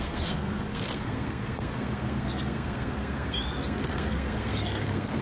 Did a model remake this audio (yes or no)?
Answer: yes